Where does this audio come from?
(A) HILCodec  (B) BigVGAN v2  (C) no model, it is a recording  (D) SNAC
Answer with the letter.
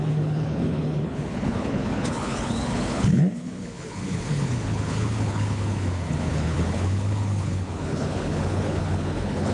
A